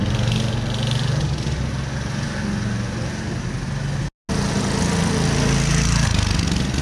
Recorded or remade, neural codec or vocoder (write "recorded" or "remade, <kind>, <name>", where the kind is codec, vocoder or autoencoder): recorded